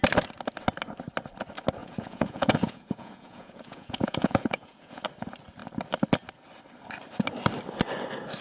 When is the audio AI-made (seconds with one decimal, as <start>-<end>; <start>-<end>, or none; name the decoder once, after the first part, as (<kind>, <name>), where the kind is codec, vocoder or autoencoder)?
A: 1.8-5.0 (vocoder, Vocos)